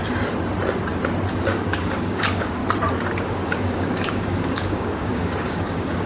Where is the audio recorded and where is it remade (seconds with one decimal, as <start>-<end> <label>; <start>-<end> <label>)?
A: 0.0-1.3 recorded; 1.3-2.6 remade; 2.6-3.2 recorded; 3.2-6.1 remade